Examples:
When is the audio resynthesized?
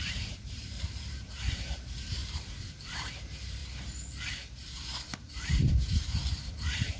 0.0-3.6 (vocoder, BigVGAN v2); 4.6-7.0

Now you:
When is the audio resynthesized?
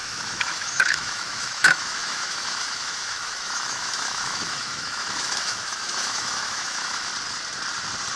0.0-7.1 (autoencoder, DAC-VAE)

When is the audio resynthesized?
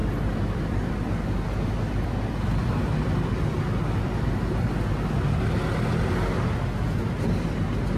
none